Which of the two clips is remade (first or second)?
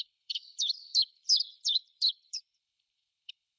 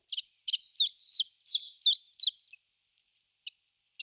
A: first